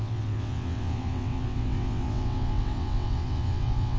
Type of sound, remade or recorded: remade